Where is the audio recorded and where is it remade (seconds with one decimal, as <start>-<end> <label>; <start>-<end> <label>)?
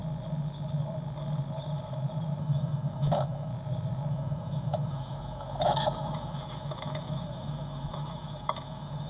0.0-2.4 recorded; 2.4-3.5 remade; 3.5-4.1 recorded; 4.1-9.1 remade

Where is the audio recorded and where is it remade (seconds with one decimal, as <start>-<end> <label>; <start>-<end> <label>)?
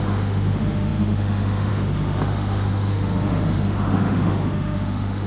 0.0-5.3 remade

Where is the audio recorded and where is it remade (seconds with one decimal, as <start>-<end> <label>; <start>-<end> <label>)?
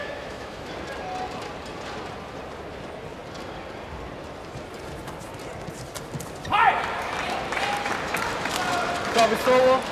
0.0-0.7 remade; 0.7-9.9 recorded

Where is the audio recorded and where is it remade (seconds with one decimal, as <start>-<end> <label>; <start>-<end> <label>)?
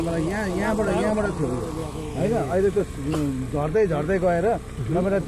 0.0-1.8 recorded; 1.8-2.8 remade; 2.8-5.3 recorded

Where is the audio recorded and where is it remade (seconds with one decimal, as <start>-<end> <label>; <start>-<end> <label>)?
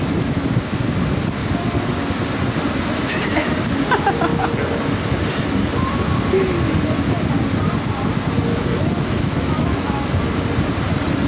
0.0-8.5 recorded; 8.5-10.2 remade; 10.2-11.3 recorded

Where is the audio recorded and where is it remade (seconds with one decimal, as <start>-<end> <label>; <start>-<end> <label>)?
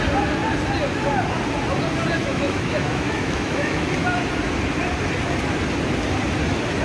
0.0-2.2 recorded; 2.2-3.9 remade; 3.9-6.8 recorded